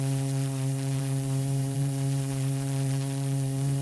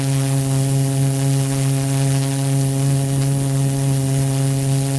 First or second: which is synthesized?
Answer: first